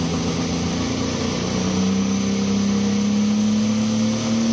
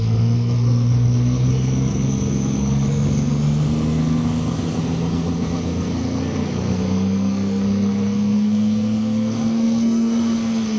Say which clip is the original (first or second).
first